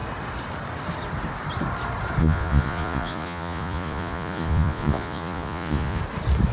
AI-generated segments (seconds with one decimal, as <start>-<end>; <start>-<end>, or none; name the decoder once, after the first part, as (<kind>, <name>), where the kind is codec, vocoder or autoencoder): 2.2-6.0 (vocoder, Vocos)